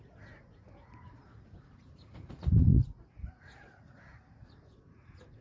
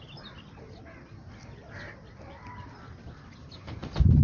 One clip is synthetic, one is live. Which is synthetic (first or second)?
first